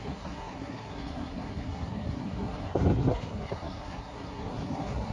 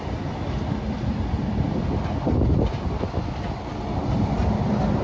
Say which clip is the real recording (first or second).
second